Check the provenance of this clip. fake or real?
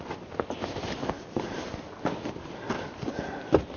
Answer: real